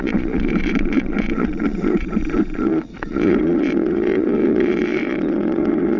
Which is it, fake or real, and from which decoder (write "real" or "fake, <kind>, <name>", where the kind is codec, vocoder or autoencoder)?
fake, vocoder, Vocos